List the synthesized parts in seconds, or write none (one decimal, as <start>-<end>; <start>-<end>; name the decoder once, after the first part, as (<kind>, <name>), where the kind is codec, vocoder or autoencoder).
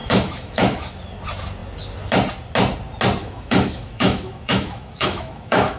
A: 0.0-1.0 (autoencoder, DAC-VAE); 3.2-5.8